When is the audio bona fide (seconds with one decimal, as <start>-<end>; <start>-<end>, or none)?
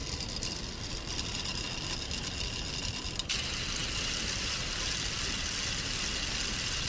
0.0-6.9